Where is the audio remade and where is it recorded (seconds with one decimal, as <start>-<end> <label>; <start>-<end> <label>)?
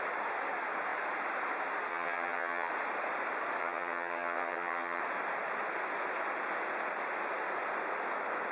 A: 0.0-1.9 recorded; 1.9-2.7 remade; 2.7-3.6 recorded; 3.6-5.0 remade; 5.0-8.5 recorded